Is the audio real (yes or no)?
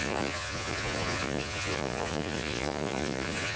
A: no